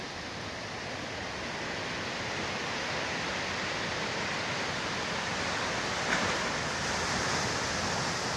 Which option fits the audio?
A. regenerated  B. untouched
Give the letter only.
B